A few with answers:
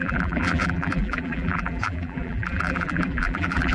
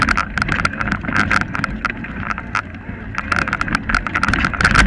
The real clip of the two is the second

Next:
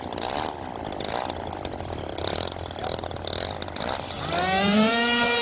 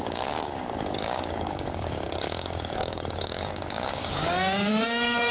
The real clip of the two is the first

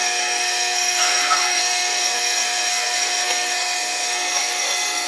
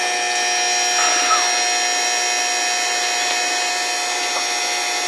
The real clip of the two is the second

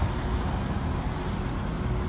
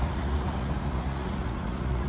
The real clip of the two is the first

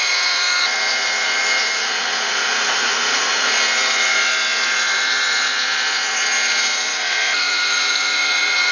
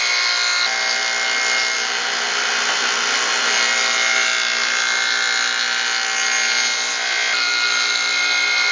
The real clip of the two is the second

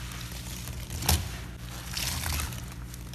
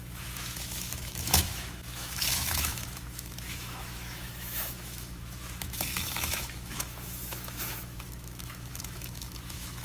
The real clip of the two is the first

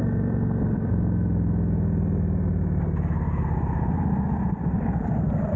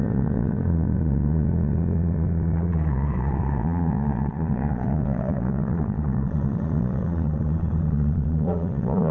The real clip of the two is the first